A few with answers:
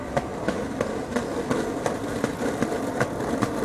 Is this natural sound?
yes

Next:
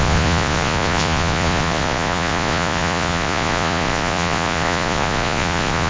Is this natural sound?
no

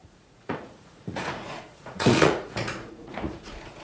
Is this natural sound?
no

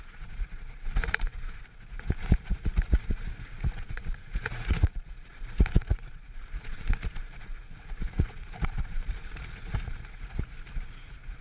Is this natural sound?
no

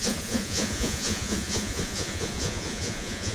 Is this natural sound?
no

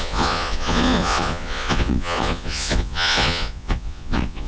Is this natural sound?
no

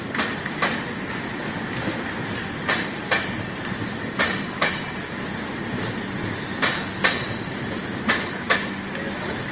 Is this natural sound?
yes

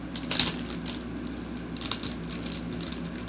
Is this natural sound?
yes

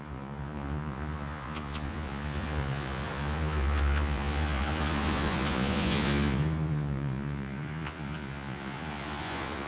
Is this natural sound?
no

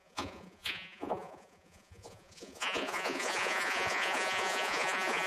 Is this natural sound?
no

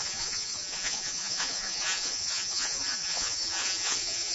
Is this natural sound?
no